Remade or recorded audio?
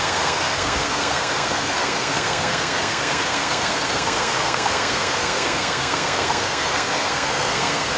remade